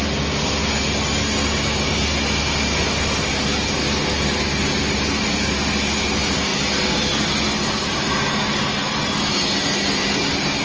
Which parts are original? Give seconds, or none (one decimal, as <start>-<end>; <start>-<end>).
0.0-10.6